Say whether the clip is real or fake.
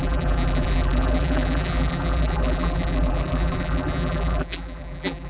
fake